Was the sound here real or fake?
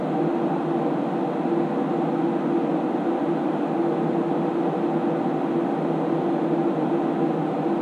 real